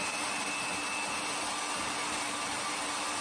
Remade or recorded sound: recorded